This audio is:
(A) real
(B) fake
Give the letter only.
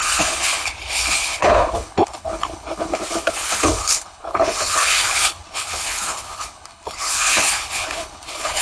B